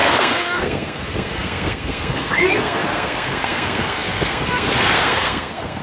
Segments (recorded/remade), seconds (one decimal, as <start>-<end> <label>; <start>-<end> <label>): 0.0-5.8 remade